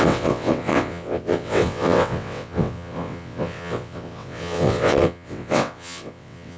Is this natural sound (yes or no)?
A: no